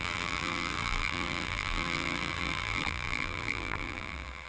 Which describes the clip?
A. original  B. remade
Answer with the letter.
B